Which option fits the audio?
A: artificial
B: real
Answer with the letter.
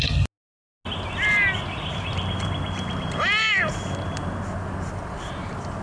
B